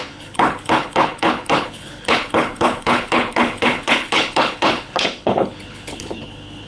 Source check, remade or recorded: remade